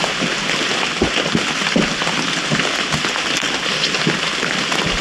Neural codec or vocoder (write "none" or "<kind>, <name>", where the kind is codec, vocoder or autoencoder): none